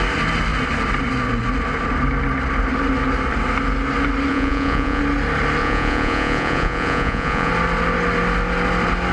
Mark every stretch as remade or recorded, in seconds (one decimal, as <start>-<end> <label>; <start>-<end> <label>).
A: 0.0-4.3 recorded; 4.3-5.0 remade; 5.0-5.6 recorded; 5.6-7.5 remade; 7.5-9.1 recorded